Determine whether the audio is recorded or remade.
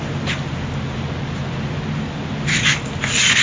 recorded